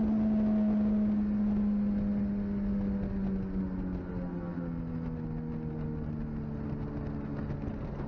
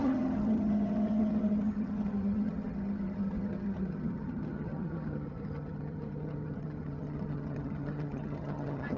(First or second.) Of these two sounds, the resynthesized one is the second